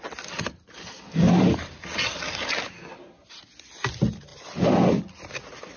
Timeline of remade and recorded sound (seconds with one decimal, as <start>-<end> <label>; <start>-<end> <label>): 0.0-5.8 recorded